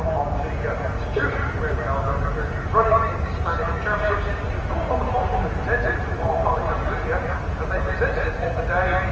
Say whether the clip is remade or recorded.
recorded